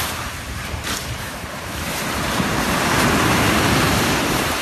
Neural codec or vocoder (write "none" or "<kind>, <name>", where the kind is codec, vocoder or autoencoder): vocoder, BigVGAN v2